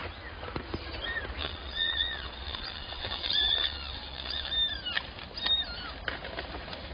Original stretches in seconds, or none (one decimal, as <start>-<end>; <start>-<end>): 0.0-1.4; 4.5-6.9